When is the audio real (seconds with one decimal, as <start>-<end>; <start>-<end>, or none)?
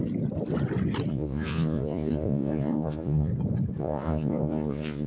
0.0-1.1; 3.3-3.8